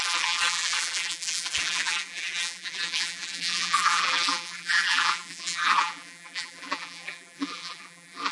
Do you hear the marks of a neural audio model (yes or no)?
yes